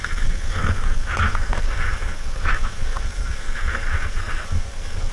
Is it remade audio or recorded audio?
remade